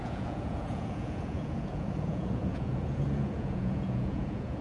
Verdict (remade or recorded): remade